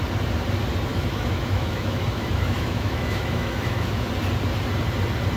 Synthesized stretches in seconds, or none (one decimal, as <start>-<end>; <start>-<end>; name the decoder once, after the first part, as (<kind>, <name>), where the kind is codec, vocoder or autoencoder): 0.9-4.1 (autoencoder, DAC-VAE)